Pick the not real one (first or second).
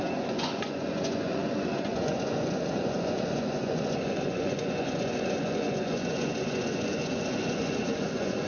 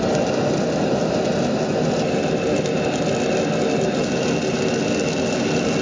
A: first